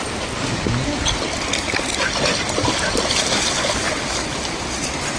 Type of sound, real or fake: real